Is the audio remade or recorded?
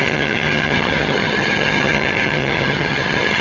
remade